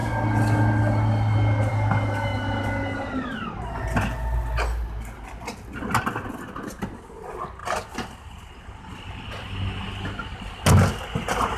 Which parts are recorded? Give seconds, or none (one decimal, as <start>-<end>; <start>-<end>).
0.0-11.6